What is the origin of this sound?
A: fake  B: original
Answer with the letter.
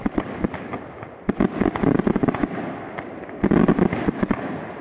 B